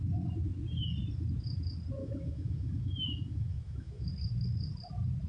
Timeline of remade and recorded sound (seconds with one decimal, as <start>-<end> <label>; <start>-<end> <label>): 0.0-2.0 recorded; 2.0-4.1 remade; 4.1-5.3 recorded